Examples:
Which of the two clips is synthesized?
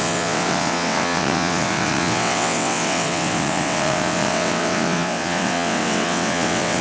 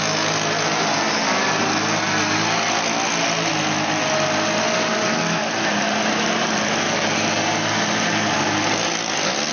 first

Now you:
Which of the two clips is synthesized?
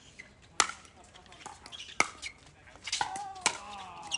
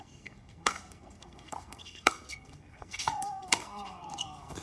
second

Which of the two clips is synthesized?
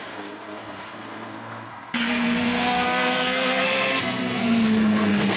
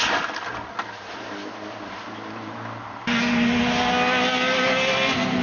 first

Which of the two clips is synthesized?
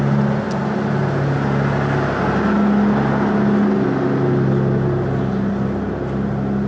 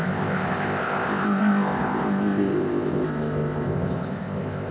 second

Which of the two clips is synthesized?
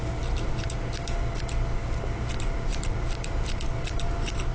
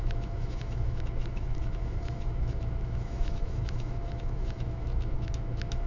second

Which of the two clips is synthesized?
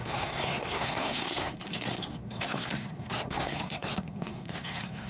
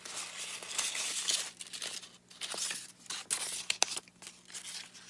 first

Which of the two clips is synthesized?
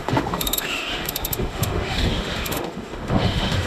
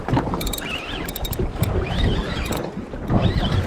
first